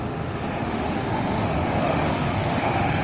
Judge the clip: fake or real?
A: fake